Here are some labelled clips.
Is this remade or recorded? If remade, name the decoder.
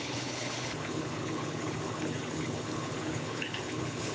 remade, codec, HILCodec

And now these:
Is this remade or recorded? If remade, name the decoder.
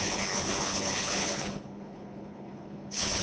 remade, codec, HILCodec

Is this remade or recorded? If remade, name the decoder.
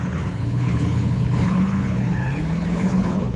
remade, codec, HILCodec